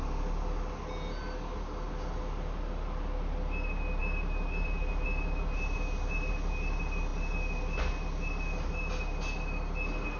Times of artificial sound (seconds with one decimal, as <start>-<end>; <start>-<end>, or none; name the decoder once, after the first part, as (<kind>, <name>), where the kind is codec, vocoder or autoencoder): none

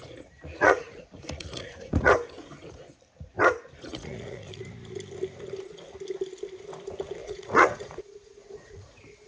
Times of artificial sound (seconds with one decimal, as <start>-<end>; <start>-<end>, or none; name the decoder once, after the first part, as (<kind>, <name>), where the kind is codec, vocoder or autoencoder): 0.5-2.1 (vocoder, Vocos); 3.9-4.6; 7.2-8.9

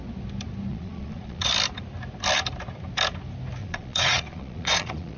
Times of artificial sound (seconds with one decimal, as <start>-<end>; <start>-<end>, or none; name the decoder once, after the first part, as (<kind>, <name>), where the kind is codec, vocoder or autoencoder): 0.7-1.5 (vocoder, Vocos); 3.6-5.2

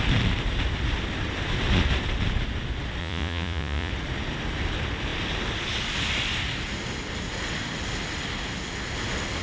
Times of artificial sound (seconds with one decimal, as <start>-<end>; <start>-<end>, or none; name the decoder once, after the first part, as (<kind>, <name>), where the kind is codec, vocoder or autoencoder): 3.0-3.9 (vocoder, Vocos)

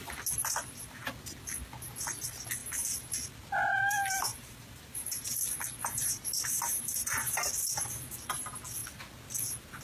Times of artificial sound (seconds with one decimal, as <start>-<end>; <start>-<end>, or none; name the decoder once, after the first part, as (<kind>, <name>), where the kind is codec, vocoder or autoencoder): 4.3-5.3 (vocoder, BigVGAN v2); 5.8-7.5

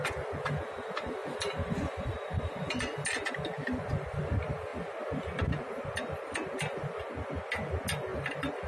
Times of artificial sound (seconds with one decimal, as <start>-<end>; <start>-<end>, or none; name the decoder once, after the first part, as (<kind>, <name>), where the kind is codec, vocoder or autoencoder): 1.2-1.8 (vocoder, BigVGAN v2); 8.1-8.7

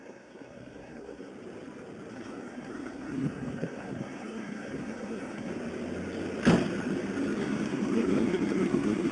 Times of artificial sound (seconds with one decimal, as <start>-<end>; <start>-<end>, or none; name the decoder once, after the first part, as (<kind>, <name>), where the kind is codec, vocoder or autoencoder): 0.0-1.3 (codec, SNAC); 2.1-5.5; 7.4-9.1

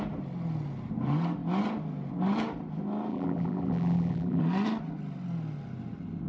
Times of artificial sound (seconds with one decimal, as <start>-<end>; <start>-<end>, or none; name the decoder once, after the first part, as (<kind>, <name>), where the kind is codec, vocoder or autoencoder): 3.1-4.4 (vocoder, BigVGAN v2)